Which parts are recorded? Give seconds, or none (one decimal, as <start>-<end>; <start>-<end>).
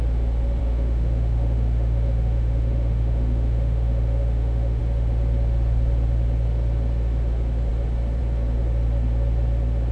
0.0-0.6; 4.8-9.9